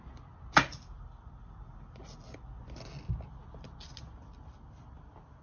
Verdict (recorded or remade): recorded